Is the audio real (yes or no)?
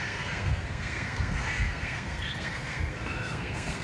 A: no